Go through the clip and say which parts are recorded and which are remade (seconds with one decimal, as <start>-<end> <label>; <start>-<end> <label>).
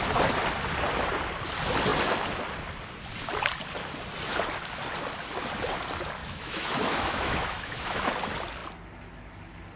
0.0-6.2 recorded; 6.2-8.1 remade; 8.1-9.8 recorded